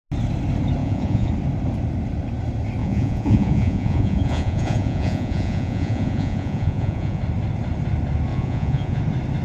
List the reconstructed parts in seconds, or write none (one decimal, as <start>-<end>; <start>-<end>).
0.8-1.3; 2.8-7.2; 8.3-9.0